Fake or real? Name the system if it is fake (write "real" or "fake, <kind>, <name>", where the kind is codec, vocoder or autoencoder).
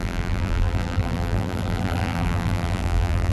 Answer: fake, vocoder, BigVGAN v2